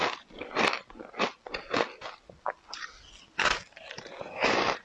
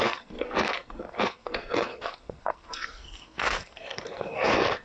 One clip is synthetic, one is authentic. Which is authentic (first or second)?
first